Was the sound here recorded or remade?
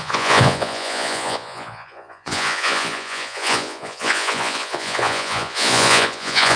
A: remade